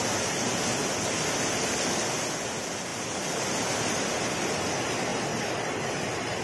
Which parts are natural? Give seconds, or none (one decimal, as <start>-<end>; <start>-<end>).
0.0-6.4